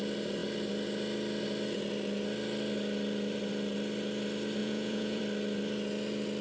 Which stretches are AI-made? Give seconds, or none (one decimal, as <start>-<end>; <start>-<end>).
4.6-5.2